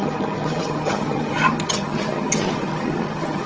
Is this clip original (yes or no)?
no